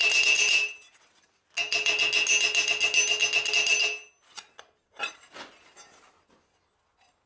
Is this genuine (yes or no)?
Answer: yes